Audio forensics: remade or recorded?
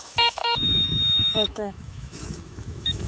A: remade